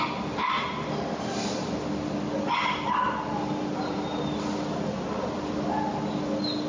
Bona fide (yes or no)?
yes